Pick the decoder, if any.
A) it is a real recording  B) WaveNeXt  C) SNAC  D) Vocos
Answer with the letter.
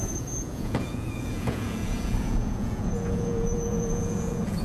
D